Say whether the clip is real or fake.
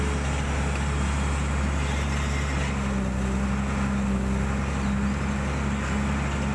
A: real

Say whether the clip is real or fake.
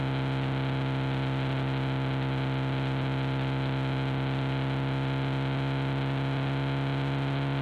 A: real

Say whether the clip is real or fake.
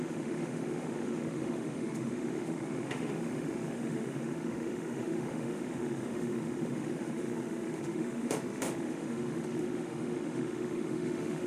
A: fake